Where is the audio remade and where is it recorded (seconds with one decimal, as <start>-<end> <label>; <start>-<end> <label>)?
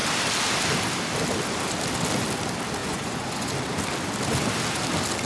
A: 0.0-2.8 recorded; 2.8-3.5 remade; 3.5-5.2 recorded